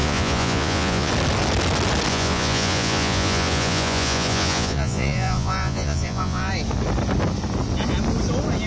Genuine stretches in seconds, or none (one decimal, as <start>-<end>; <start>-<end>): 1.1-2.1; 6.5-8.7